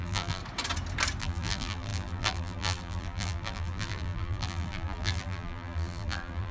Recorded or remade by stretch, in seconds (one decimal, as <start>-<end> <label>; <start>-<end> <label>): 0.0-0.4 remade; 0.4-1.2 recorded; 1.2-6.5 remade